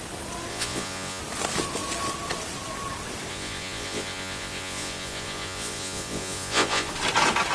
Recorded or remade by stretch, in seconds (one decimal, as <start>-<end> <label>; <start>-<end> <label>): 0.0-0.5 recorded; 0.5-1.2 remade; 1.2-3.3 recorded; 3.3-6.9 remade; 6.9-7.5 recorded